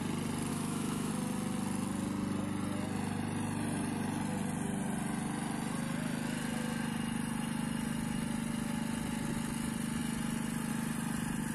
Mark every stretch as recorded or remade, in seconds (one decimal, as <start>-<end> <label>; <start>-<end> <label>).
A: 0.0-0.5 recorded; 0.5-1.1 remade; 1.1-11.5 recorded